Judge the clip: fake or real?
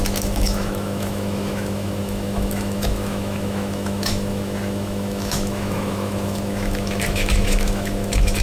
fake